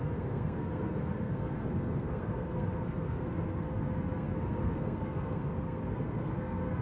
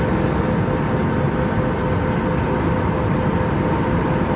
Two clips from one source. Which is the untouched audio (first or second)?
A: second